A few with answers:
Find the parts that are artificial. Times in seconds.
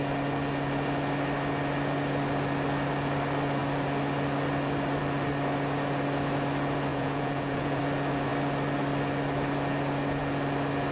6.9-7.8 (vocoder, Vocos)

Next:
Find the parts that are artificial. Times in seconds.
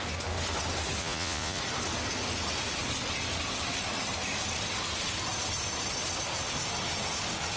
1.0-1.6 (vocoder, Vocos)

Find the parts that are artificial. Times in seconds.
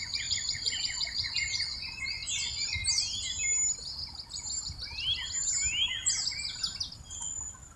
0.0-2.8 (vocoder, Vocos)